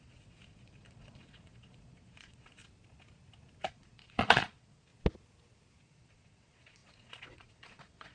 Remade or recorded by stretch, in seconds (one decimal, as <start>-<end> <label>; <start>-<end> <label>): 0.0-2.6 remade; 2.6-3.7 recorded; 3.7-4.9 remade; 4.9-5.8 recorded; 5.8-8.1 remade